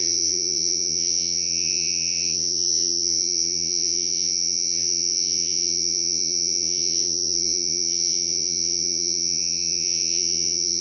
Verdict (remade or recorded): remade